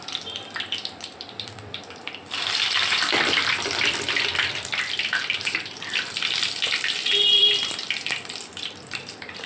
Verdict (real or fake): fake